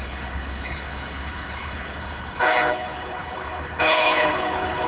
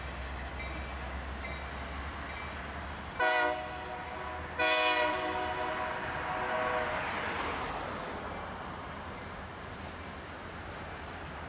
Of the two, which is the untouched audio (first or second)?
second